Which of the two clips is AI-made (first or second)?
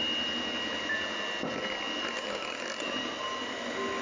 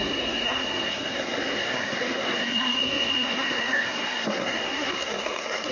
second